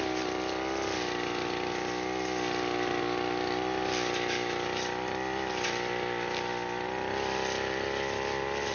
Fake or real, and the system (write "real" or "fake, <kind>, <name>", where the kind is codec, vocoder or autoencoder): real